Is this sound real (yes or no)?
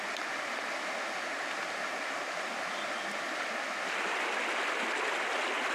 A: yes